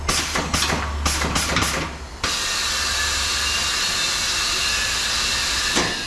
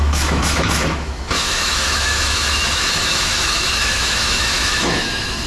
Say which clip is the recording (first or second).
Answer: first